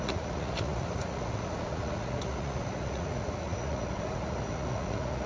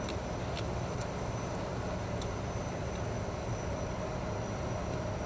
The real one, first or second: second